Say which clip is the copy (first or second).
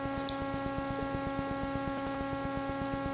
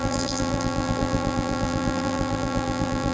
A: second